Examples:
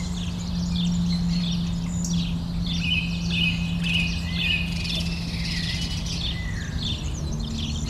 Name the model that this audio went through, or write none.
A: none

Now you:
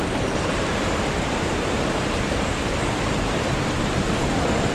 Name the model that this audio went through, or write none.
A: vocoder, BigVGAN v2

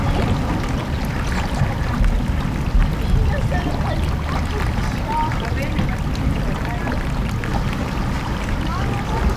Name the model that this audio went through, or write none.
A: none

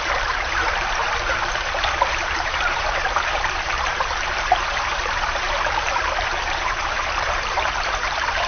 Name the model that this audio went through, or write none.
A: vocoder, BigVGAN v2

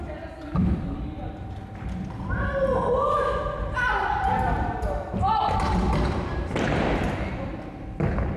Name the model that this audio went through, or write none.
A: vocoder, BigVGAN v2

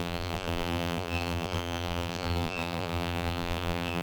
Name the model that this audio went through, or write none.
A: vocoder, BigVGAN v2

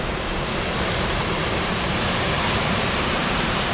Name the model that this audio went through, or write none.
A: vocoder, BigVGAN v2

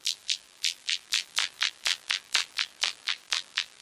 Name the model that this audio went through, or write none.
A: vocoder, BigVGAN v2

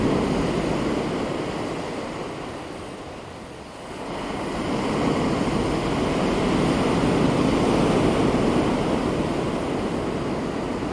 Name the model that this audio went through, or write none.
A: none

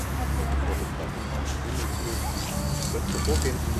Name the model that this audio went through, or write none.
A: none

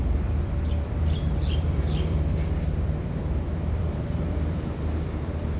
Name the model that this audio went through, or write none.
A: vocoder, BigVGAN v2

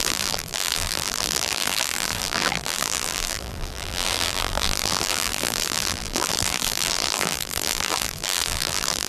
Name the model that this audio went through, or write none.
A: vocoder, BigVGAN v2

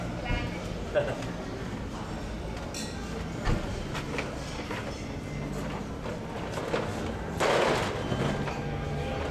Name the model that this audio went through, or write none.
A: none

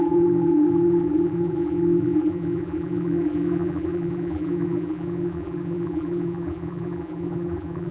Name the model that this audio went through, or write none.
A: vocoder, BigVGAN v2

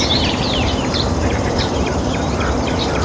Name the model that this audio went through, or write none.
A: vocoder, BigVGAN v2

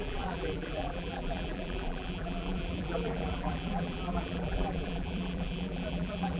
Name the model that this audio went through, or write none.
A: vocoder, BigVGAN v2